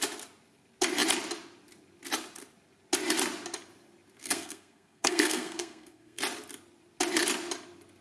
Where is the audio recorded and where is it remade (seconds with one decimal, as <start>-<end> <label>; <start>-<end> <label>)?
0.0-4.2 recorded; 4.2-6.2 remade; 6.2-8.0 recorded